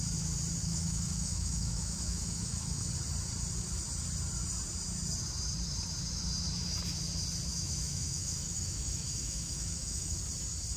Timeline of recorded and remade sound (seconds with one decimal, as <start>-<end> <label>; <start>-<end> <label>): 0.0-0.6 recorded; 0.6-2.9 remade; 2.9-7.5 recorded; 7.5-10.2 remade; 10.2-10.8 recorded